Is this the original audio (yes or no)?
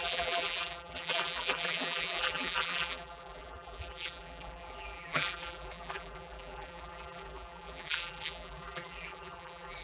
no